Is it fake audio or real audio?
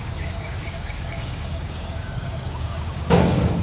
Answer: fake